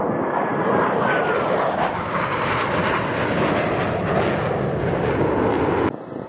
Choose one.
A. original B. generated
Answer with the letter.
A